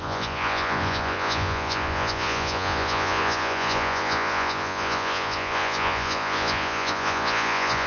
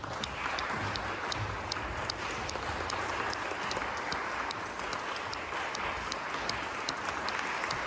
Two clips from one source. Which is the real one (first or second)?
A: second